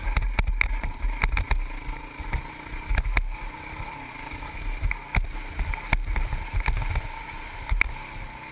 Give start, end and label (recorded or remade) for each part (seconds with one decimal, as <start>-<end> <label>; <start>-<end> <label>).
0.0-4.3 recorded; 4.3-4.9 remade; 4.9-8.5 recorded